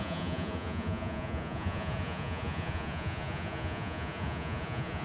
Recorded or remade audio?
remade